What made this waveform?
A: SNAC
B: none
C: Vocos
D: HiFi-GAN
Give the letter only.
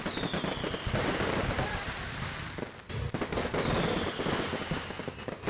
B